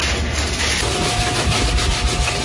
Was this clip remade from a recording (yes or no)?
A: no